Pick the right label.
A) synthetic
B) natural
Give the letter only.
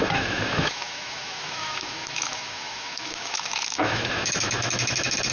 A